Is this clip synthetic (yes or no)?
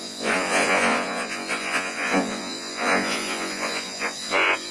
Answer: yes